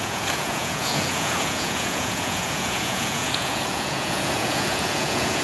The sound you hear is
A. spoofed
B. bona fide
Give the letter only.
A